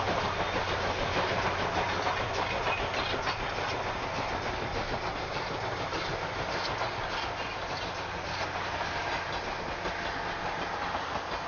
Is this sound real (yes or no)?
yes